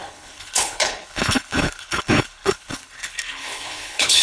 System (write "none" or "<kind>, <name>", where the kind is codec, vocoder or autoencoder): codec, HILCodec